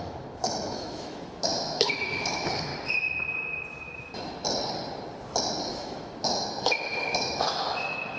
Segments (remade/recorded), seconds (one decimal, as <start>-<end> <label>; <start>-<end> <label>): 0.0-2.7 remade; 2.7-5.7 recorded; 5.7-8.2 remade